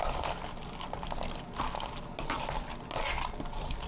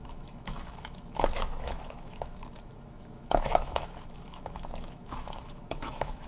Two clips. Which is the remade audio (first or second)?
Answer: second